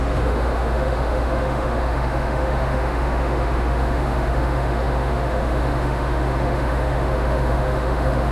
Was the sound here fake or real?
fake